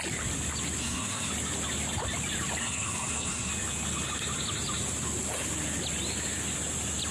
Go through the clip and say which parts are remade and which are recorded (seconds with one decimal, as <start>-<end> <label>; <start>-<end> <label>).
0.0-0.8 recorded; 0.8-1.3 remade; 1.3-2.6 recorded; 2.6-3.5 remade; 3.5-7.1 recorded